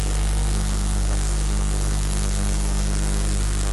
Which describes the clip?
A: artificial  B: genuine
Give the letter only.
A